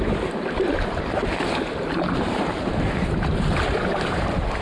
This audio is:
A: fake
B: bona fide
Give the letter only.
A